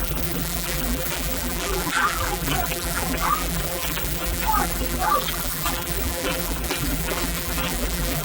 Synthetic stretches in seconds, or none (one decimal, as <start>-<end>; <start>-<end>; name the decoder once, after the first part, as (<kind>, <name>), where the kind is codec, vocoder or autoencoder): 0.0-8.2 (vocoder, BigVGAN v2)